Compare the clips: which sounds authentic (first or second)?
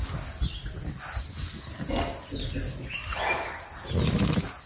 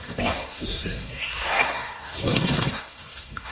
first